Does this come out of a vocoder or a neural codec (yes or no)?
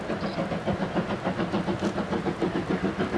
no